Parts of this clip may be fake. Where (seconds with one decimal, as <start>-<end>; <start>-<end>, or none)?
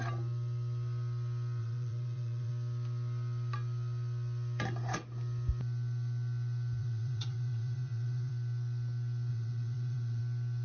1.6-2.5; 6.8-8.3; 9.3-10.2